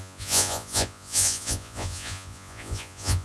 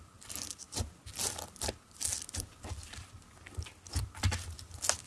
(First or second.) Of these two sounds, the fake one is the first